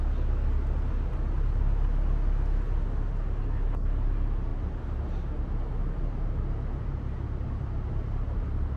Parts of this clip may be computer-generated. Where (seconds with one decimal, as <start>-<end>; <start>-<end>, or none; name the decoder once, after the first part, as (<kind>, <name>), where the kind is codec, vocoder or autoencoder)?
none